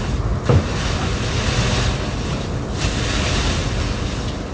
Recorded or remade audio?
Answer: recorded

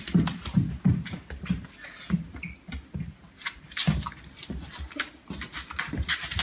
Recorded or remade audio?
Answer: recorded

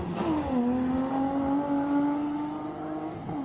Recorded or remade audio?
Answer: recorded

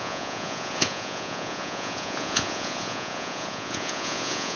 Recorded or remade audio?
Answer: remade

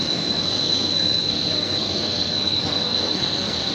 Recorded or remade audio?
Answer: remade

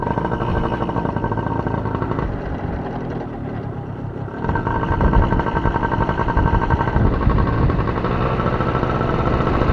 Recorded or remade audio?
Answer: recorded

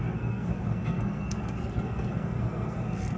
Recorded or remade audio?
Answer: remade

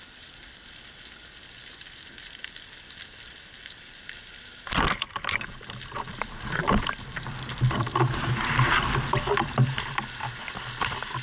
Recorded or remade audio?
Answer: remade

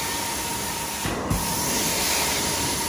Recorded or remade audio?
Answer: recorded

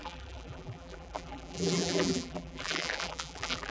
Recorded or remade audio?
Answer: remade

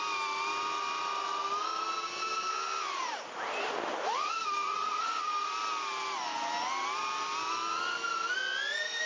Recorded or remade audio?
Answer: recorded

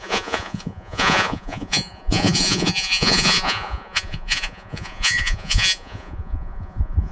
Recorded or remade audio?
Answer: remade